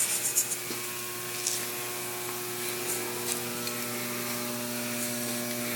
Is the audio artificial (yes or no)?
no